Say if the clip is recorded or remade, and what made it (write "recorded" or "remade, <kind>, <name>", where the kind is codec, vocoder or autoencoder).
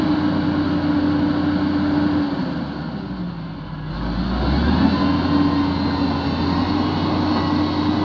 recorded